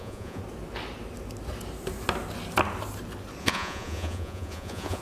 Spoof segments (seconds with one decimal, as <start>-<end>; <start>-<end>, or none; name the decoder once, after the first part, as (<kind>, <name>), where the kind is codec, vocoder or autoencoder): 0.0-0.4 (vocoder, Vocos); 3.4-5.0